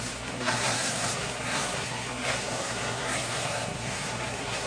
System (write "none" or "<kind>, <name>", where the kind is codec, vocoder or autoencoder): codec, SNAC